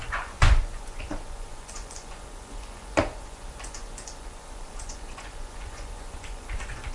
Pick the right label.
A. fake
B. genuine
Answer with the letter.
A